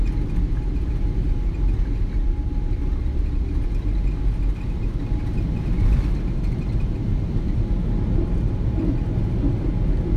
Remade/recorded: recorded